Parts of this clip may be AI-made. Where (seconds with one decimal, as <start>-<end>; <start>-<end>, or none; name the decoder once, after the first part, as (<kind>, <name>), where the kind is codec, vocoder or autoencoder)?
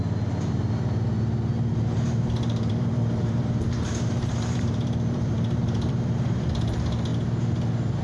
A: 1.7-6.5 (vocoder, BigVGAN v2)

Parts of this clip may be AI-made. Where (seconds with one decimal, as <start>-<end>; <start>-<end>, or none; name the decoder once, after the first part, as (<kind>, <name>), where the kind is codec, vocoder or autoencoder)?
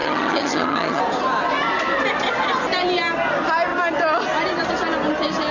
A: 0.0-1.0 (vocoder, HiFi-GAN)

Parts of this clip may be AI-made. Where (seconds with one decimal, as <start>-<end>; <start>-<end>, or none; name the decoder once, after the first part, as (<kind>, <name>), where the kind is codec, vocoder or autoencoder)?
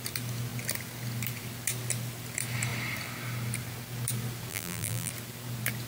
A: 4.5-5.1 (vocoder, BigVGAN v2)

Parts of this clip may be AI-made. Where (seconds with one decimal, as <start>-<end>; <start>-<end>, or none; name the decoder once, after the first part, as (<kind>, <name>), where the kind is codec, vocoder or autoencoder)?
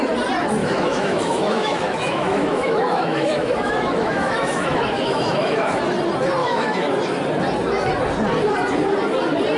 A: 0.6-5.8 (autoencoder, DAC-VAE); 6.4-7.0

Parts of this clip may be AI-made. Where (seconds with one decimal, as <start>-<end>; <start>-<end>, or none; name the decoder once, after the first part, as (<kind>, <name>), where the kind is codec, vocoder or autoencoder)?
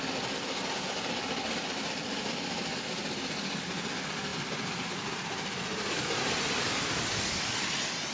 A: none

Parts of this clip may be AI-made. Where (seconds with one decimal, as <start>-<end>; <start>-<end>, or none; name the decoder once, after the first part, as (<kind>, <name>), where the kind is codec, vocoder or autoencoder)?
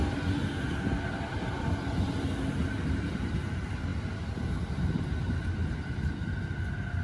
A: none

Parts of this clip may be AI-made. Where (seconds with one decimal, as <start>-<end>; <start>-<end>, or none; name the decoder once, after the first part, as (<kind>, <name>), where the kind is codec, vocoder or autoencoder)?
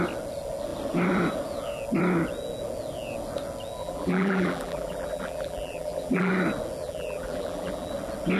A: 3.8-6.3 (vocoder, BigVGAN v2); 6.8-7.9